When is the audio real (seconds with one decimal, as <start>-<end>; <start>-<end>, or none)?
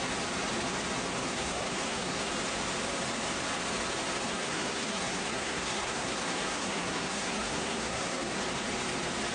0.0-1.2; 2.3-4.3; 8.4-9.3